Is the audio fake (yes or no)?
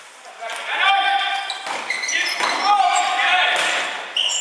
no